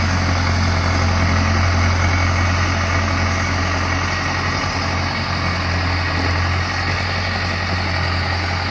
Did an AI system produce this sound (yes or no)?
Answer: no